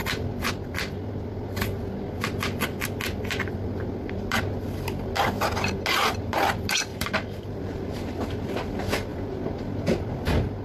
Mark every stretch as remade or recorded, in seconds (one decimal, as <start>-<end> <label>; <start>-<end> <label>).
0.0-0.5 remade; 0.5-6.9 recorded; 6.9-8.2 remade; 8.2-9.1 recorded; 9.1-9.6 remade; 9.6-10.6 recorded